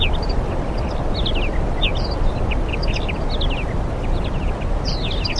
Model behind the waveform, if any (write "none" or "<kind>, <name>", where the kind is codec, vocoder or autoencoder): none